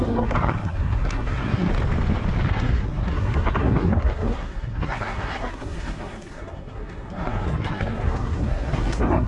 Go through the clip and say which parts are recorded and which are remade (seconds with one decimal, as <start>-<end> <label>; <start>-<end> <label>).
0.0-1.7 remade; 1.7-2.5 recorded; 2.5-9.3 remade